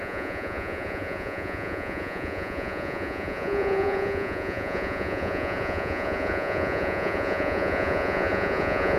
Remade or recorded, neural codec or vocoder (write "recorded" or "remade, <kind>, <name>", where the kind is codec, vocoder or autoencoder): remade, vocoder, Vocos